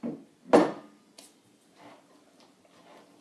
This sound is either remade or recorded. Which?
recorded